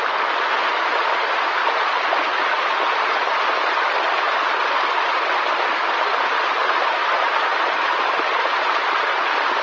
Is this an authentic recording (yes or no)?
yes